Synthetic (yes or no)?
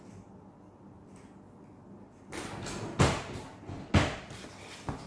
no